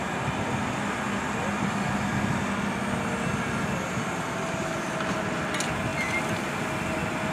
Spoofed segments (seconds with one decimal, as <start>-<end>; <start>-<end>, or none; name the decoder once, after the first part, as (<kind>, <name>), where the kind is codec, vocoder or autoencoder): none